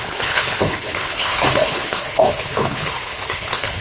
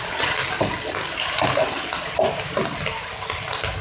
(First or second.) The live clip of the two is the second